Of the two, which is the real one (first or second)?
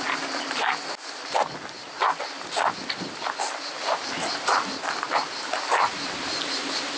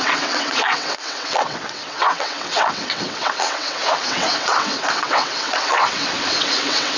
first